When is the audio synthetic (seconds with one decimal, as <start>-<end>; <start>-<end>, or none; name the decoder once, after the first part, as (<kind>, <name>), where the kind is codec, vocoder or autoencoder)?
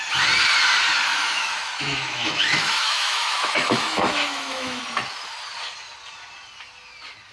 1.1-4.8 (autoencoder, DAC-VAE)